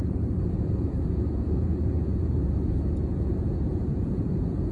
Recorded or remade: remade